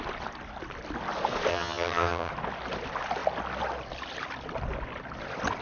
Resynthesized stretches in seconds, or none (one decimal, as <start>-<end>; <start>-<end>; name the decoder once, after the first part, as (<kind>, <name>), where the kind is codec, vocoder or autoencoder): 1.5-2.3 (vocoder, HiFi-GAN)